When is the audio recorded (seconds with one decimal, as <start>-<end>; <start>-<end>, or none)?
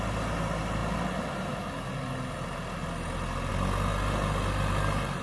0.0-5.2